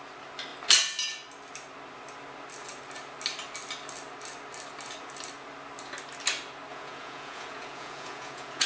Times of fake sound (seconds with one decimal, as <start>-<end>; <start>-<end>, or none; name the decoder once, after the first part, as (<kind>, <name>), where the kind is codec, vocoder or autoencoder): 6.7-8.7 (vocoder, Vocos)